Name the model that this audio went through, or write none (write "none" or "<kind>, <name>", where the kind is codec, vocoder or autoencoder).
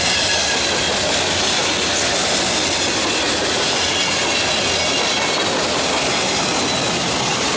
none